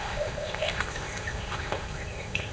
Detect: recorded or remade remade